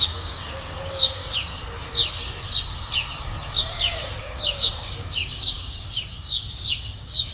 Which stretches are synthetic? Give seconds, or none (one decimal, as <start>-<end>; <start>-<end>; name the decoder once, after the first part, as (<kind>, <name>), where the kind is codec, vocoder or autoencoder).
0.0-1.2 (codec, DAC); 4.2-7.3